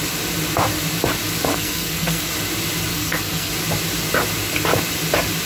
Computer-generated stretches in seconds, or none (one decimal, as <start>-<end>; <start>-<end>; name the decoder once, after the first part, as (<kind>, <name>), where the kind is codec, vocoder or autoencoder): 1.5-2.3 (codec, SNAC); 2.9-3.5